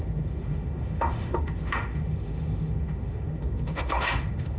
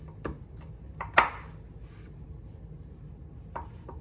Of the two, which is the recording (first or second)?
second